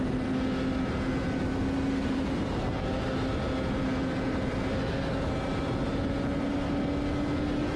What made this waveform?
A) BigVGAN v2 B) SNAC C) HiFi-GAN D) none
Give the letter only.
D